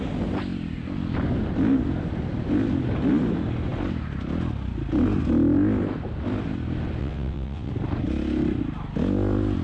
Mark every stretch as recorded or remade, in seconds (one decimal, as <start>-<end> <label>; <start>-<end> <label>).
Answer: 0.0-7.0 recorded; 7.0-7.7 remade; 7.7-9.6 recorded